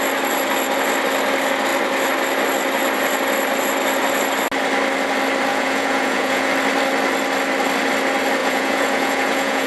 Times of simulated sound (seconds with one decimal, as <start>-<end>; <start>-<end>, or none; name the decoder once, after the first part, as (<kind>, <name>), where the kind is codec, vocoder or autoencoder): 5.5-6.5 (vocoder, Vocos); 8.4-9.7